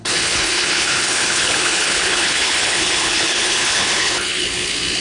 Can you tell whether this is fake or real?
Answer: fake